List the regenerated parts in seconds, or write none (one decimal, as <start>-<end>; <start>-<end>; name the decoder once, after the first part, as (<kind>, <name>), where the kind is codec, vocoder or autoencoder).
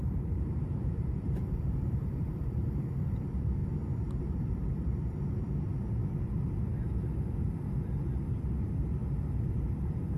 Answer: 0.0-3.6 (vocoder, BigVGAN v2); 4.2-6.7; 8.6-9.0; 9.5-10.2